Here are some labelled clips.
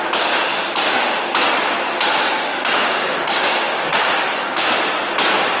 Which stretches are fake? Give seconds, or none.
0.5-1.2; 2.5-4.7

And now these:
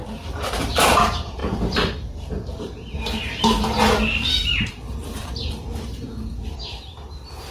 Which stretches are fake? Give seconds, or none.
0.5-7.5

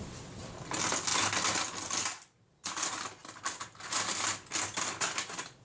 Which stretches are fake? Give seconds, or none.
none

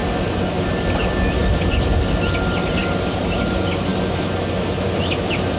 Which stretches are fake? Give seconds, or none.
none

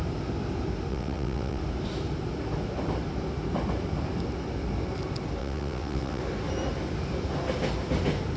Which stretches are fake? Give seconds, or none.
0.9-1.6; 5.4-6.2

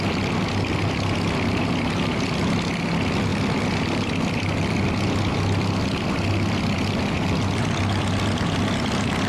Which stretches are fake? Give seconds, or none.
none

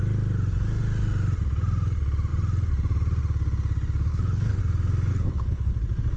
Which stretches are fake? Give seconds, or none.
4.1-4.6; 5.1-5.7